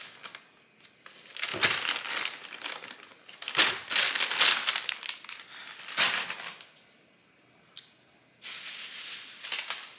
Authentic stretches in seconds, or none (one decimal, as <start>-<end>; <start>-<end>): 0.0-10.0